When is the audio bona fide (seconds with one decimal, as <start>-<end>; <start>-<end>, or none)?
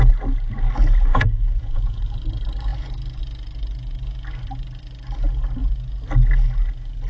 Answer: 0.0-1.1; 2.0-7.1